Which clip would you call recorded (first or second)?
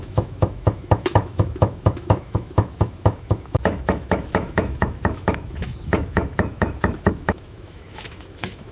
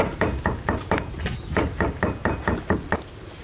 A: second